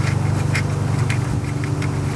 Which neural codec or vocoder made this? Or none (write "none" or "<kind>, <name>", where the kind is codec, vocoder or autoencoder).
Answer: none